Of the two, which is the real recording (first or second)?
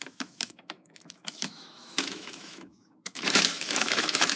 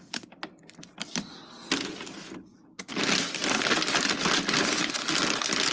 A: second